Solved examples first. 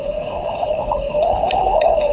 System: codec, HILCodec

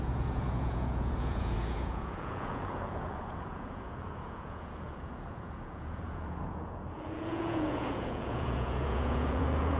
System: vocoder, Vocos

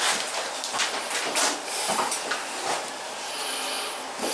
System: none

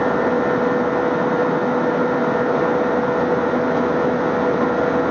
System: none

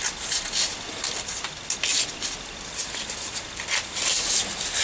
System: none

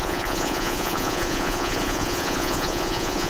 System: vocoder, Vocos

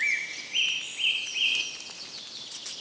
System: none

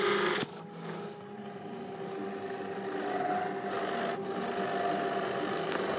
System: none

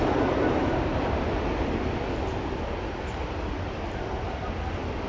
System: none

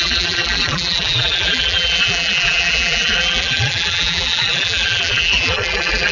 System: vocoder, BigVGAN v2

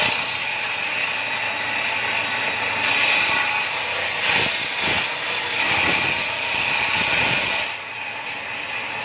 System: none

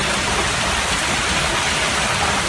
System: none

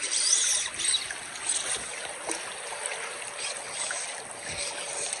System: none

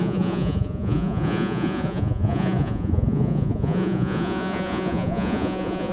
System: vocoder, Vocos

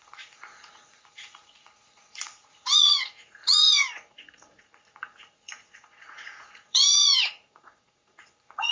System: vocoder, Vocos